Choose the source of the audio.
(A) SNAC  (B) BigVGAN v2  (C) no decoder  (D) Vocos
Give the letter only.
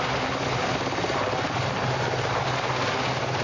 C